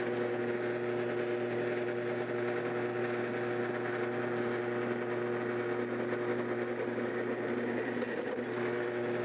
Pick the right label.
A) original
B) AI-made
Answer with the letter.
A